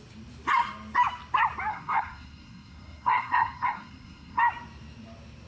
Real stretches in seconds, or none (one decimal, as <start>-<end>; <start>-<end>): 0.0-1.7; 4.4-5.5